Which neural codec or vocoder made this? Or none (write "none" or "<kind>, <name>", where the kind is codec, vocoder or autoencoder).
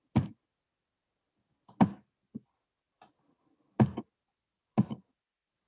none